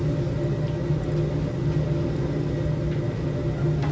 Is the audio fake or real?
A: real